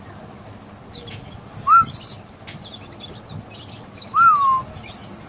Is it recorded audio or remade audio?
recorded